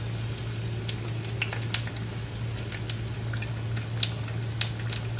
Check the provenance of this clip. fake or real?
real